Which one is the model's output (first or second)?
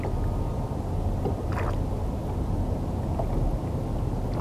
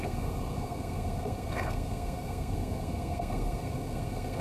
second